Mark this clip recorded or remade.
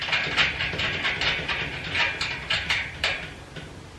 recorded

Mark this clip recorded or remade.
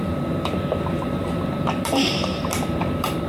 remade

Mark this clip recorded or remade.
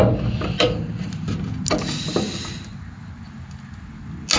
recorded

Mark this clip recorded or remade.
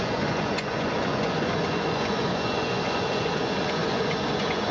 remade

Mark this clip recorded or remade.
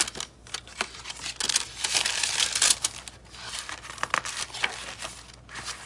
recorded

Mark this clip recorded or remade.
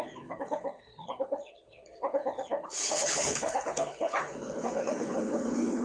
remade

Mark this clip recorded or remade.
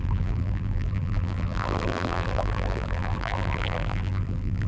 remade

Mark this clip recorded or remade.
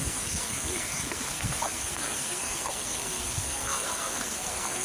remade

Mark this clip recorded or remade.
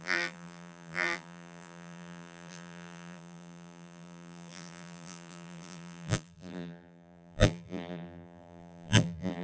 remade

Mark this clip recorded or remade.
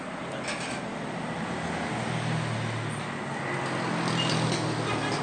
recorded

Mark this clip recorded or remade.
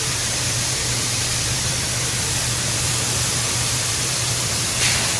remade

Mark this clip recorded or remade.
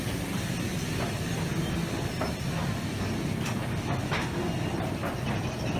recorded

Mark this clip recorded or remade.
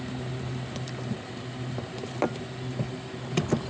recorded